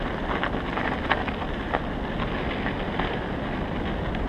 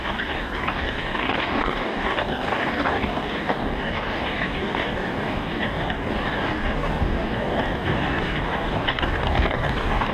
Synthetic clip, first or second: second